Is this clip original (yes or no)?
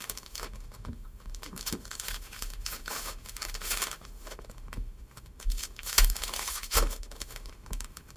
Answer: no